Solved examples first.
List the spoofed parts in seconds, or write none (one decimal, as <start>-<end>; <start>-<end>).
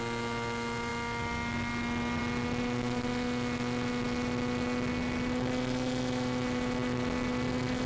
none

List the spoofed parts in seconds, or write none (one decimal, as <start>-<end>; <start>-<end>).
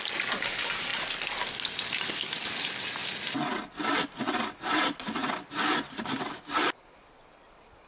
none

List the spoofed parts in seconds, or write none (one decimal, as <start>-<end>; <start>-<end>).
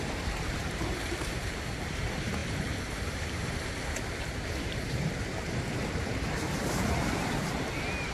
0.0-8.1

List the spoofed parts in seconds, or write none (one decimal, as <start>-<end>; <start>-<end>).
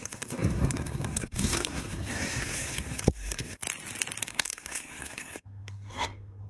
0.0-3.6; 4.2-6.5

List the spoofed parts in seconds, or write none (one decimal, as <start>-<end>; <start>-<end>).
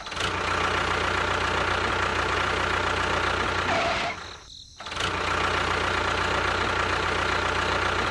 none